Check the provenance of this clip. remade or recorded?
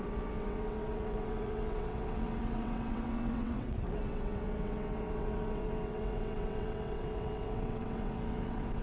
remade